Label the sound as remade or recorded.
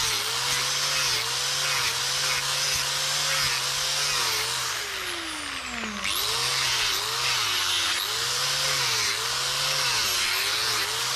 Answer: recorded